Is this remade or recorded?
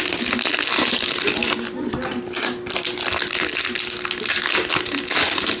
recorded